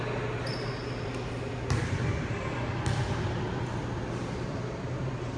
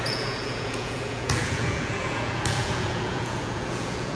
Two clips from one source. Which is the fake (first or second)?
second